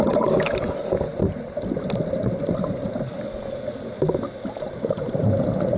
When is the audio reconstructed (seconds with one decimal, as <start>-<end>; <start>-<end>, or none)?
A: none